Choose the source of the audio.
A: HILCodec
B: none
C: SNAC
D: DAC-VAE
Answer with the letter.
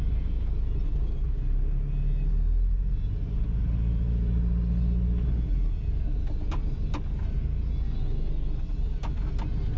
B